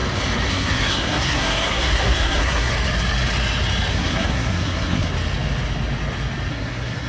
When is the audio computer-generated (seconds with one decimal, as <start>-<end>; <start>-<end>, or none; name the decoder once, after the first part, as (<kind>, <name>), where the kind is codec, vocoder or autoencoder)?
0.5-2.7 (codec, SNAC); 3.9-5.1; 6.5-7.1